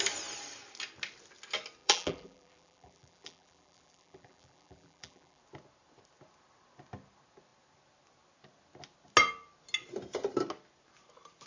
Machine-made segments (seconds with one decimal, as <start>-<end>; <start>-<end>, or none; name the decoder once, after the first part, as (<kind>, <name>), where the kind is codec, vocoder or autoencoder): 1.8-5.4 (vocoder, BigVGAN v2)